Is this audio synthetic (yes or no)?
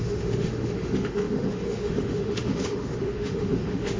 yes